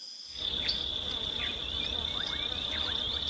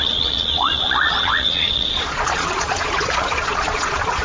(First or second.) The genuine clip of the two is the first